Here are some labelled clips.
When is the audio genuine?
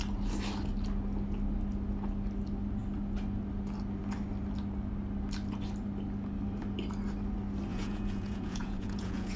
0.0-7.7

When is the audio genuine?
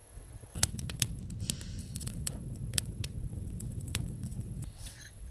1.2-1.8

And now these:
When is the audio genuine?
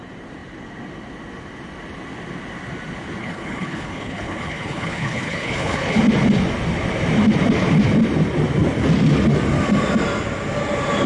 0.0-3.2; 6.0-11.1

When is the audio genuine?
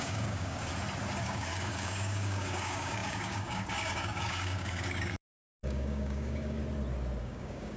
0.7-1.2; 6.6-7.2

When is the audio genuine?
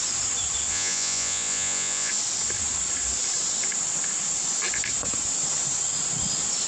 0.0-0.7; 2.1-6.7